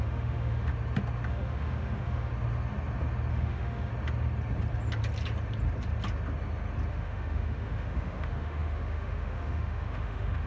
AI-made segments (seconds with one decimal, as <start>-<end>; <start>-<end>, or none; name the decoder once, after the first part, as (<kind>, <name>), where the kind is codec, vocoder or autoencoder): 0.0-0.7 (autoencoder, DAC-VAE); 1.3-2.3; 3.3-3.9; 6.9-10.5